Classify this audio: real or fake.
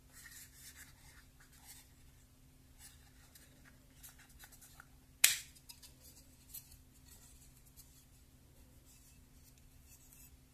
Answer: real